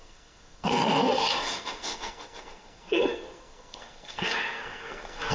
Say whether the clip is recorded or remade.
remade